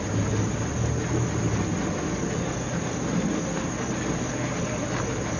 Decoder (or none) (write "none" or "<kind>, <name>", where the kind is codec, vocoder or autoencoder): none